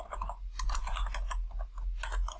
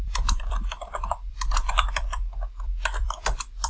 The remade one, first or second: second